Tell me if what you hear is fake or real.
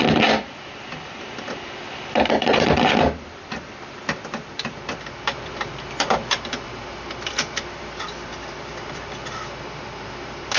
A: fake